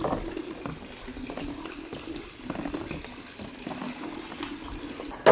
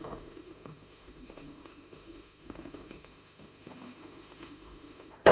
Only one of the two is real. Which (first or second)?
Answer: first